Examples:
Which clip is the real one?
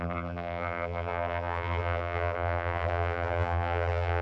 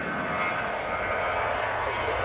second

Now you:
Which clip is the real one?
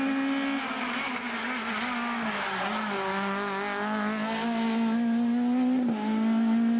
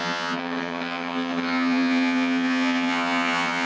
first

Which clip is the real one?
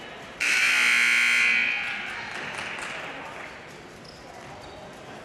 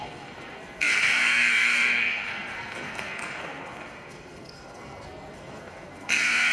first